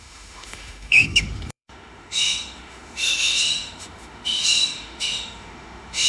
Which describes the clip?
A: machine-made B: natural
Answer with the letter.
A